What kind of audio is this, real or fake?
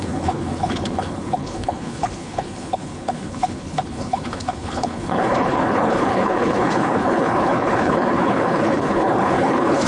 fake